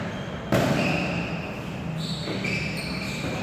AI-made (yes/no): no